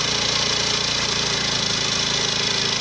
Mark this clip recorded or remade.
recorded